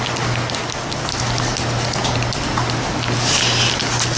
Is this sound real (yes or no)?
yes